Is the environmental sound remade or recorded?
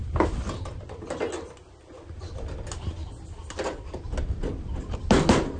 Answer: recorded